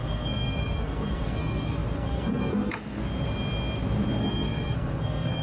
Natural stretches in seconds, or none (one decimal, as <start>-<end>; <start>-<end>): 3.0-4.2